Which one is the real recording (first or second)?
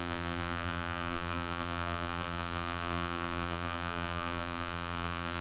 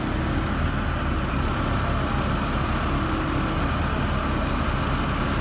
second